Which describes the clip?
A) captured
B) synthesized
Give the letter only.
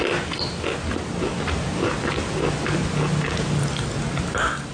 A